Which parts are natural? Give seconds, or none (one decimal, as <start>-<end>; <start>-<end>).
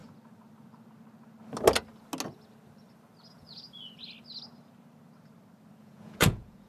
0.0-3.3; 4.0-5.8